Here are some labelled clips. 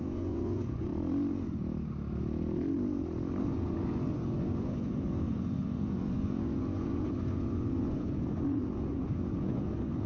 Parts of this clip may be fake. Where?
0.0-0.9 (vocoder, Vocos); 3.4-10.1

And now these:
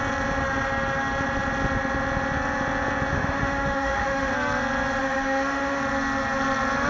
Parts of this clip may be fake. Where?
3.1-4.3 (autoencoder, DAC-VAE); 5.0-5.8

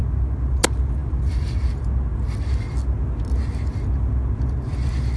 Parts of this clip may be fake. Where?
none

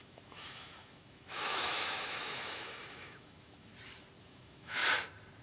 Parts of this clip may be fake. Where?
0.0-3.7 (autoencoder, DAC-VAE); 4.2-4.8

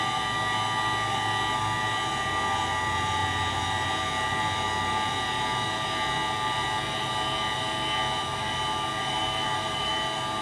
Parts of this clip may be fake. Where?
9.1-9.9 (vocoder, BigVGAN v2)